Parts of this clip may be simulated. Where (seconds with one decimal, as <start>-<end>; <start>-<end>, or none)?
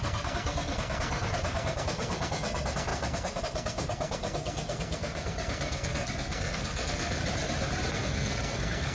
0.0-7.2; 7.9-8.9